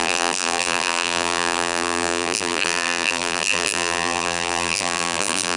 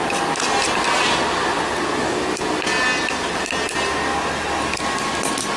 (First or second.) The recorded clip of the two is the second